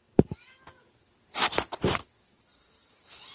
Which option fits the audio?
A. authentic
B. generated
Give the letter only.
A